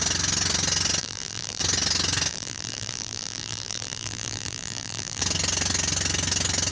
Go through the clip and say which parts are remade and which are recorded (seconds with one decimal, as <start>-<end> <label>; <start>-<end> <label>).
0.0-1.0 recorded; 1.0-1.6 remade; 1.6-2.3 recorded; 2.3-5.2 remade; 5.2-6.7 recorded